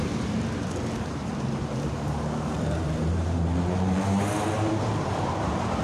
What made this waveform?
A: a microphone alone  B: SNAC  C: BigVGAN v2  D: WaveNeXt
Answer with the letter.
C